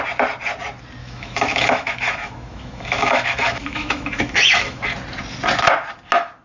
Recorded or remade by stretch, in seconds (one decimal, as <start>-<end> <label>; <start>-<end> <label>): 0.0-1.0 recorded; 1.0-4.8 remade; 4.8-6.4 recorded